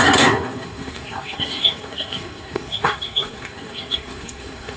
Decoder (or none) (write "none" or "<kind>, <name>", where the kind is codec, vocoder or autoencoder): codec, SNAC